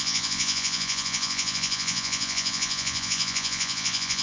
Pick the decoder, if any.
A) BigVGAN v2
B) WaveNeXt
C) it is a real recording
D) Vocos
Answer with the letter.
D